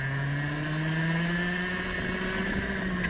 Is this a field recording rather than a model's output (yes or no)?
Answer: yes